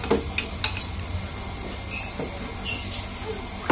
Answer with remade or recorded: recorded